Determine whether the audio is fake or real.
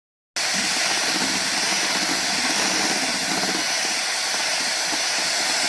real